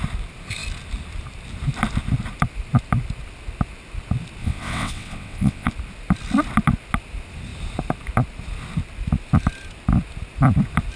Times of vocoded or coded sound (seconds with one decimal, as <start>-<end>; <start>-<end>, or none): 4.4-5.7